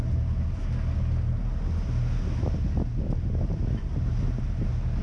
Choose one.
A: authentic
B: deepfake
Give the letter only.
A